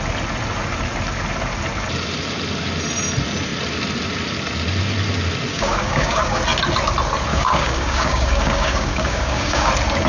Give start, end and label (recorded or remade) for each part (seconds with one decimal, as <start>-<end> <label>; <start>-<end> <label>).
0.0-5.5 recorded; 5.5-6.4 remade; 6.4-7.3 recorded; 7.3-9.7 remade; 9.7-10.1 recorded